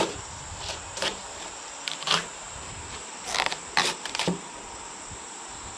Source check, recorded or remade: remade